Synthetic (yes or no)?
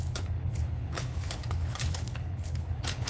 yes